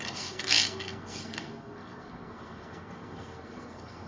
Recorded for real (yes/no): no